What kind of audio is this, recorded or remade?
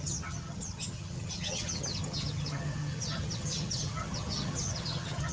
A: remade